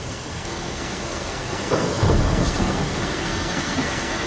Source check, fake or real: fake